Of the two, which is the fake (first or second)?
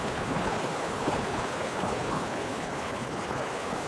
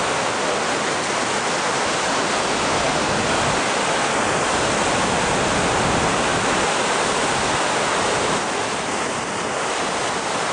first